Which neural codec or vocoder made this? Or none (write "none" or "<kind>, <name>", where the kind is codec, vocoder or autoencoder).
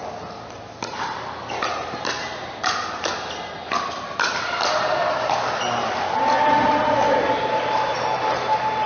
none